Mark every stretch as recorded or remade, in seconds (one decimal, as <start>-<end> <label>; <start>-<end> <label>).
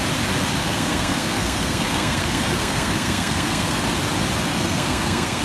0.0-0.6 recorded; 0.6-3.8 remade; 3.8-4.5 recorded; 4.5-5.4 remade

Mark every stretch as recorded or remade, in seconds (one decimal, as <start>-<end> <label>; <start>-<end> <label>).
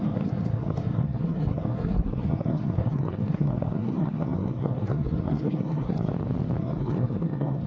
0.0-6.1 remade; 6.1-6.6 recorded; 6.6-7.7 remade